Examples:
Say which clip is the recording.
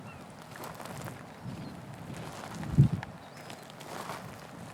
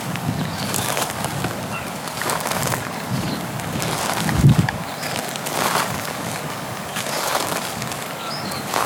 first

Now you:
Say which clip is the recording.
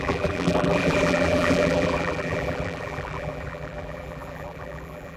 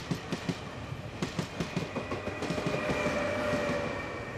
second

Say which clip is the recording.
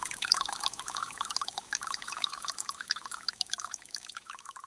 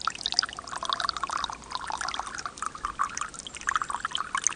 second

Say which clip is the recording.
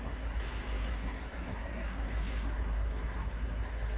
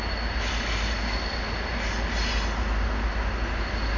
second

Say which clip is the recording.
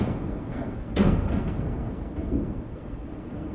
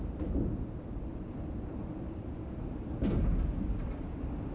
second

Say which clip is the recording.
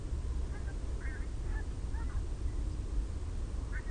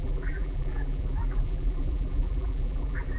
first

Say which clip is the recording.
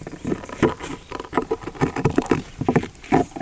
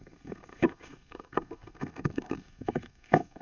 first